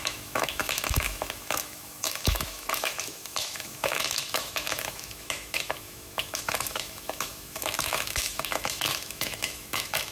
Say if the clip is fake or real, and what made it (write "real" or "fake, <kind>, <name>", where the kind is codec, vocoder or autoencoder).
fake, autoencoder, DAC-VAE